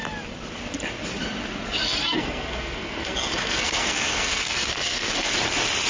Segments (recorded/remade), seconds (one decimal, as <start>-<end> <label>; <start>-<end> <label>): 0.0-2.0 recorded; 2.0-5.3 remade; 5.3-5.9 recorded